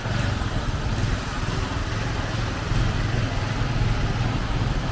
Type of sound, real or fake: real